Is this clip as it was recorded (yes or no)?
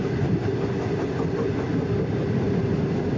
yes